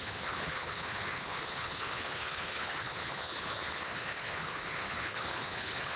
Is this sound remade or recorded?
remade